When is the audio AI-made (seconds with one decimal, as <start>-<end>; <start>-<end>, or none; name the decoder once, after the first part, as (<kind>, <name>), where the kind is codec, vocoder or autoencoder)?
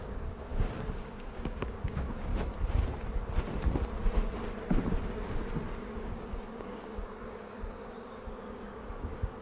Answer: 0.0-2.3 (codec, DAC); 5.7-9.4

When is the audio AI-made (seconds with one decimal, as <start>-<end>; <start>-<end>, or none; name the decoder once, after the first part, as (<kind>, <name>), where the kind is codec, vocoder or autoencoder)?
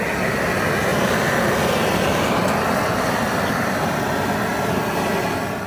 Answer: none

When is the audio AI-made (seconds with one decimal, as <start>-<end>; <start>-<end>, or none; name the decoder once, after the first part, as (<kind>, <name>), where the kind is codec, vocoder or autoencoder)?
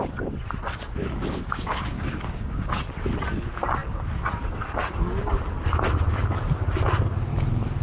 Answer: 1.0-2.7 (codec, DAC)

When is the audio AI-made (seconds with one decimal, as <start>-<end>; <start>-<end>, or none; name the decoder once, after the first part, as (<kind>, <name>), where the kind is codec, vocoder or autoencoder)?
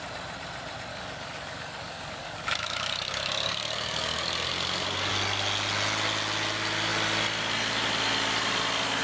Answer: 0.9-5.1 (codec, DAC)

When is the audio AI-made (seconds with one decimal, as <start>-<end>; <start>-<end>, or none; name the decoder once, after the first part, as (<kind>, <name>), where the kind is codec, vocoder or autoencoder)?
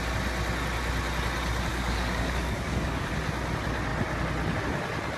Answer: 1.7-3.1 (codec, DAC)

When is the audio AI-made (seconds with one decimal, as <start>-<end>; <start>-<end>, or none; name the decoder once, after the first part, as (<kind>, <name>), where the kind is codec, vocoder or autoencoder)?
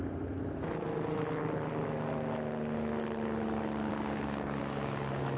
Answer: 3.9-4.6 (codec, DAC)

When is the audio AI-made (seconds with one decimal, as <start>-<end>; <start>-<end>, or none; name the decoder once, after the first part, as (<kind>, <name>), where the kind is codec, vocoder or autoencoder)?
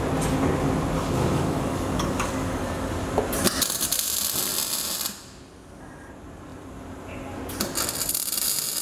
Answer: 1.2-2.9 (codec, DAC)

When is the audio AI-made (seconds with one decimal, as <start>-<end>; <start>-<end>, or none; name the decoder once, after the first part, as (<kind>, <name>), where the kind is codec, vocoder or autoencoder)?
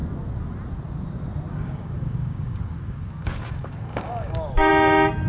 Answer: 1.5-4.7 (codec, DAC)